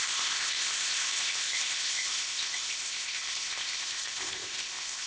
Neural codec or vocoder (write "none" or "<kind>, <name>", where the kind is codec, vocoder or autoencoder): codec, ZipCodec